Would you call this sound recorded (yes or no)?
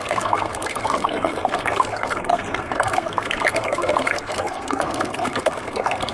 no